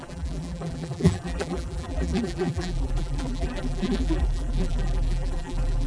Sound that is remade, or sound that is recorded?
remade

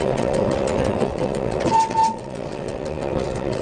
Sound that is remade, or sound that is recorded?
remade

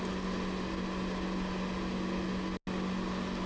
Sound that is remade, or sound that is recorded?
recorded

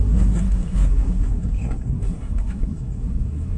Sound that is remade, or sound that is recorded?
remade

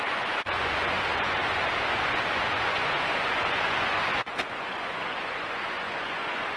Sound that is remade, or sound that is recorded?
remade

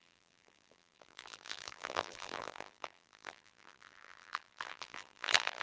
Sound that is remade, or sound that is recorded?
remade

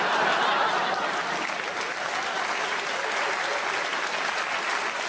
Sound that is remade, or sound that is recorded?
recorded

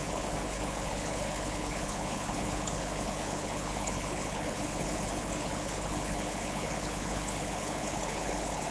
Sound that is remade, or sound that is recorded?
remade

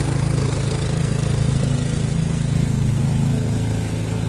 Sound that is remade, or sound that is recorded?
remade